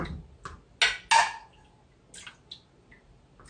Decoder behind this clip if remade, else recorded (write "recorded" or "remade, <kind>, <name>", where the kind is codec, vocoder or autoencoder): recorded